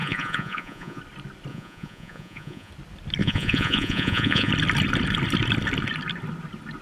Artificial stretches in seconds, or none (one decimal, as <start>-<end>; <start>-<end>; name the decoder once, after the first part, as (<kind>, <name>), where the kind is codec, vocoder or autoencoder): 0.0-1.0 (vocoder, Vocos); 1.5-2.7; 3.2-4.5